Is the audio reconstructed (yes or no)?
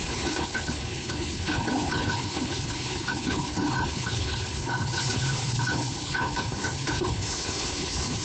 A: yes